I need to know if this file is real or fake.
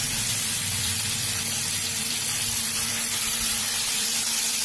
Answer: fake